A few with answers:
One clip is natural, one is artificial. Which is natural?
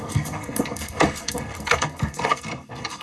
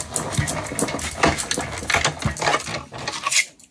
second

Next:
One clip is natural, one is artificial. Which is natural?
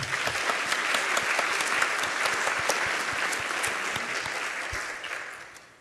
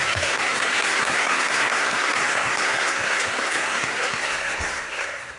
first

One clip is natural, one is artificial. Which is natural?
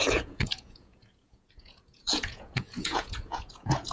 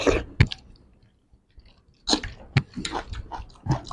second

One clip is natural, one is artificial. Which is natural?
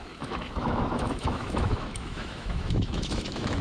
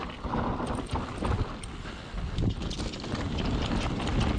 second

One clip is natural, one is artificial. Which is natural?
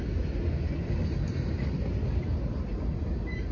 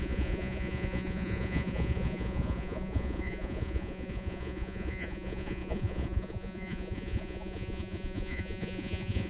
first